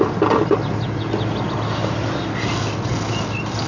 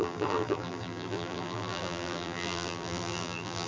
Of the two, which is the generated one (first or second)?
second